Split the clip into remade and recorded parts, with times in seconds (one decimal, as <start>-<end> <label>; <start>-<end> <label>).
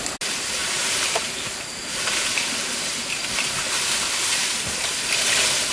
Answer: 0.0-0.6 recorded; 0.6-3.8 remade; 3.8-4.4 recorded; 4.4-5.7 remade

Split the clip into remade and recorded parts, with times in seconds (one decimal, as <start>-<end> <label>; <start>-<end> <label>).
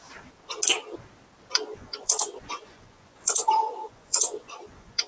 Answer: 0.0-1.7 recorded; 1.7-5.1 remade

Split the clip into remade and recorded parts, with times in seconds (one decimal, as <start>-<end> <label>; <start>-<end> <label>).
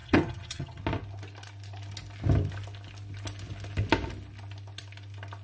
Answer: 0.0-0.8 remade; 0.8-5.4 recorded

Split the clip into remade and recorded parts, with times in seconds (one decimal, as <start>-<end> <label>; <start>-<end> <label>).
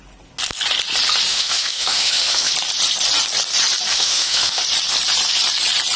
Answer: 0.0-1.3 recorded; 1.3-2.5 remade; 2.5-3.9 recorded; 3.9-4.6 remade; 4.6-6.0 recorded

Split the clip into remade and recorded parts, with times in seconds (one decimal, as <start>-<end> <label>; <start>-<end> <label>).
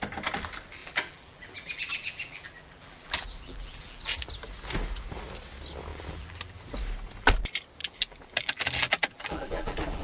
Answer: 0.0-0.8 recorded; 0.8-4.3 remade; 4.3-5.9 recorded; 5.9-6.6 remade; 6.6-7.8 recorded; 7.8-10.0 remade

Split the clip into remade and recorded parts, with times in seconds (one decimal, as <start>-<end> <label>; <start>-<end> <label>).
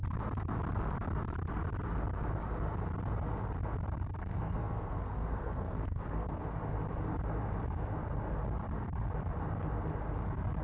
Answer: 0.0-4.2 recorded; 4.2-6.4 remade; 6.4-10.6 recorded